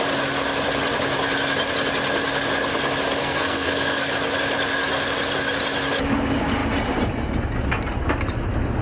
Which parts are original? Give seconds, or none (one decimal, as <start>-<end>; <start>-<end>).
0.0-3.2; 4.1-8.8